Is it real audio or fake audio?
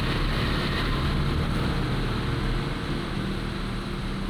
real